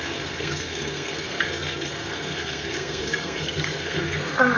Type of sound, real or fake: fake